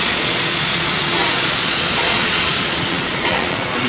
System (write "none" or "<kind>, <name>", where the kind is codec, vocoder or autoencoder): vocoder, Vocos